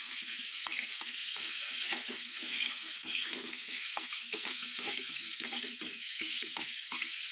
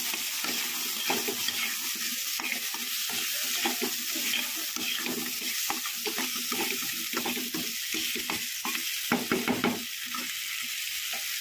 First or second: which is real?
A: second